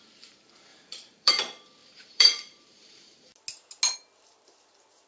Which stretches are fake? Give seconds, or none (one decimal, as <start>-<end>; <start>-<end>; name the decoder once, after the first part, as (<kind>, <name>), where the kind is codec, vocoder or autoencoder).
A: 0.7-1.3 (vocoder, BigVGAN v2); 1.8-3.3